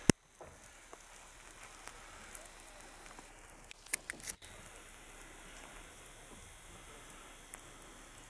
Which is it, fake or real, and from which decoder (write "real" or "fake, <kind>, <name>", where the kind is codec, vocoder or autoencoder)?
real